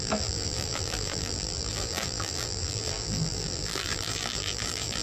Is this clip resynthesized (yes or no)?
yes